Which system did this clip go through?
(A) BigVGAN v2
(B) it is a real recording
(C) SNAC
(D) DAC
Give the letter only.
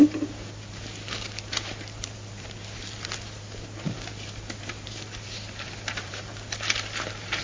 A